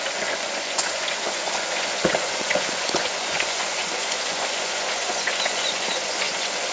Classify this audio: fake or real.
fake